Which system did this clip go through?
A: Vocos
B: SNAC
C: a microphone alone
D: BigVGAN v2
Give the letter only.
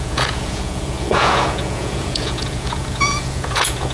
A